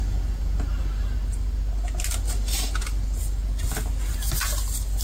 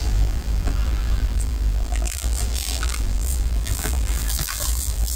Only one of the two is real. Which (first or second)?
first